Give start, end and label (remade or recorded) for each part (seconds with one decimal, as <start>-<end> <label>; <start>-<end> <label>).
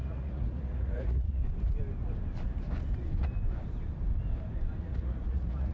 0.0-1.4 remade; 1.4-4.8 recorded; 4.8-5.7 remade